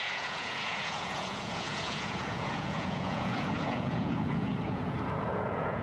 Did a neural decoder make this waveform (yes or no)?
yes